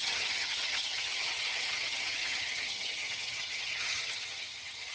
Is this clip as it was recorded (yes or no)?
no